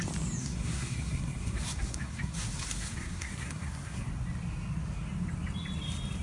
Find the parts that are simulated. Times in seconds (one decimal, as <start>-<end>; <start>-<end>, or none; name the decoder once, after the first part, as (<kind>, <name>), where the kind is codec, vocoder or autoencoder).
0.4-4.1 (codec, SNAC)